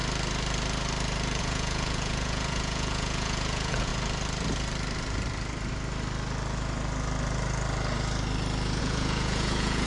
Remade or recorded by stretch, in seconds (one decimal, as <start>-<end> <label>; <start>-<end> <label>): 0.0-1.4 recorded; 1.4-3.9 remade; 3.9-8.8 recorded; 8.8-9.9 remade